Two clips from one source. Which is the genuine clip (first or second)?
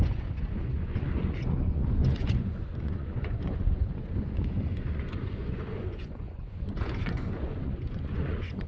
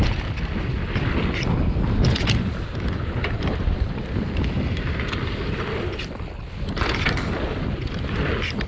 second